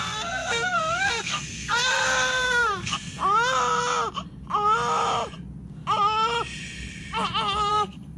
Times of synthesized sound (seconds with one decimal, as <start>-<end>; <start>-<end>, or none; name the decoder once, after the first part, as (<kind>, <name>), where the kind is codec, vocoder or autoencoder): 0.0-3.2 (codec, SNAC); 7.7-8.2